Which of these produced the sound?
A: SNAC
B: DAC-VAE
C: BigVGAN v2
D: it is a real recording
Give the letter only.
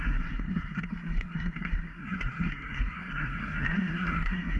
A